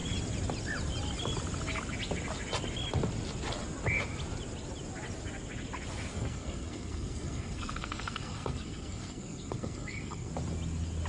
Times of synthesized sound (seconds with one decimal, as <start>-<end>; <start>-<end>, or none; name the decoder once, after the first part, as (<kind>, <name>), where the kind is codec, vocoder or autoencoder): 6.1-10.3 (codec, SNAC)